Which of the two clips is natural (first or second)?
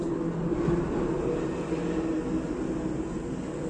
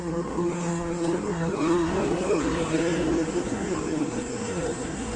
first